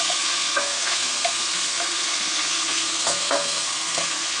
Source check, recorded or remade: remade